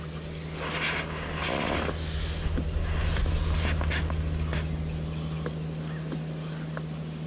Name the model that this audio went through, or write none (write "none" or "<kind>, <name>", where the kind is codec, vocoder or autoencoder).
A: none